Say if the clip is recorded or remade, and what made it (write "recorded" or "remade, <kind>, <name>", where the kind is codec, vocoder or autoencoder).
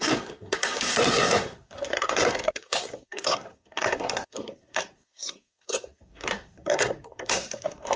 remade, codec, SNAC